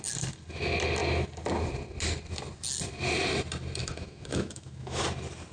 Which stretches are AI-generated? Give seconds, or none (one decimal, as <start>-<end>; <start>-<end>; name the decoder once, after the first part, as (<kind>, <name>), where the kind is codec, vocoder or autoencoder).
3.8-5.0 (autoencoder, DAC-VAE)